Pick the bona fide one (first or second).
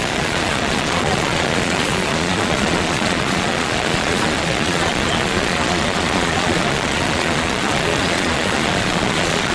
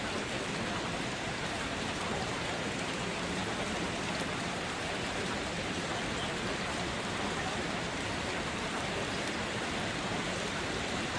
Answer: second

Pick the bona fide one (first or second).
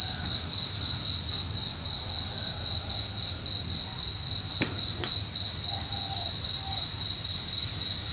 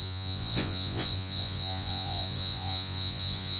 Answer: first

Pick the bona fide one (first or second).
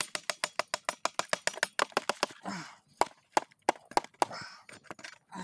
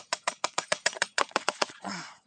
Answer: first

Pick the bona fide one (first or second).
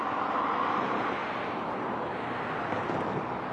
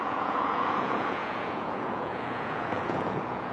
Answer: first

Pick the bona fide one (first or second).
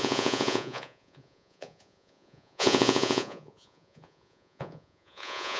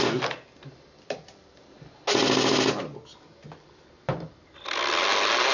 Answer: second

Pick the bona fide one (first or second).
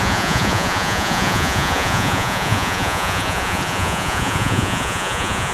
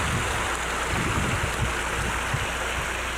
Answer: second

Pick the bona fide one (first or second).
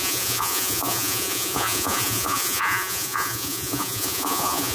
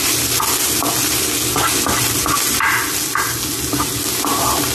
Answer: second